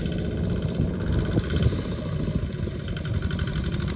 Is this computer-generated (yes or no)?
no